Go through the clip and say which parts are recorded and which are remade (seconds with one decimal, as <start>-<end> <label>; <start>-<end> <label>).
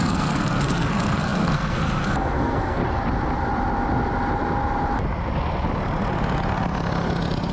0.0-2.8 remade; 2.8-7.5 recorded